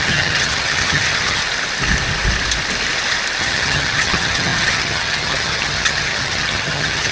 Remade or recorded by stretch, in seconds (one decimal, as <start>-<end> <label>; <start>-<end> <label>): 0.0-1.4 remade; 1.4-3.4 recorded; 3.4-7.1 remade